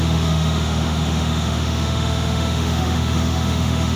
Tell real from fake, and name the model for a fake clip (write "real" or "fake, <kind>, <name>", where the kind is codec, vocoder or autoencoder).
fake, autoencoder, DAC-VAE